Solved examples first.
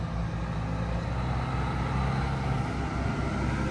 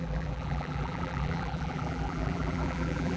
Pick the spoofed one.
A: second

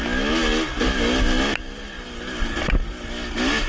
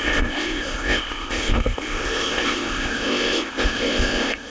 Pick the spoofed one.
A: second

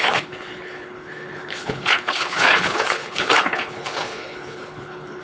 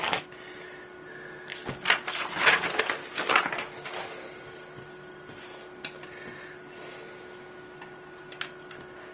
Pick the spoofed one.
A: first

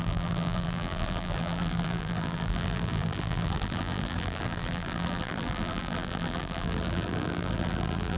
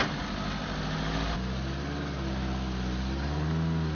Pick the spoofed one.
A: first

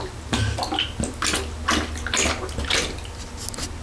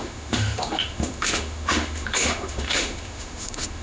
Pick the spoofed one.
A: second